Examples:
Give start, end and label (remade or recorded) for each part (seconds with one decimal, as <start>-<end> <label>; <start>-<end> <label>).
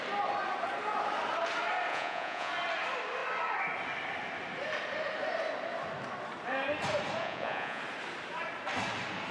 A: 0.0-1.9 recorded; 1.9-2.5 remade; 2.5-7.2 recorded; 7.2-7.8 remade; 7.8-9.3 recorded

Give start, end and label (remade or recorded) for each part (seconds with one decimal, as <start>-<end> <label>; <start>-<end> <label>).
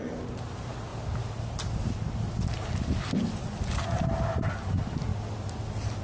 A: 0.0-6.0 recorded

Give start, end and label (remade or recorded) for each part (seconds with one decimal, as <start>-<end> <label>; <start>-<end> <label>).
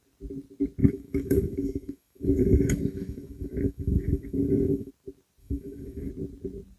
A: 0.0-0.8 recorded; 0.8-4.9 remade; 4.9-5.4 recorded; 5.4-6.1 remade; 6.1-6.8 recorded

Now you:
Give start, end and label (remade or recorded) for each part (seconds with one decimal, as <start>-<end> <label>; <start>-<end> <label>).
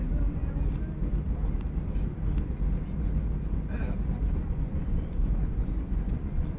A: 0.0-0.4 remade; 0.4-4.4 recorded; 4.4-6.6 remade